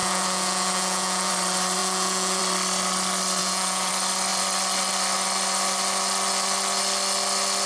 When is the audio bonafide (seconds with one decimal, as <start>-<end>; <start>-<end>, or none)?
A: 1.3-1.8; 2.4-3.4; 3.9-7.7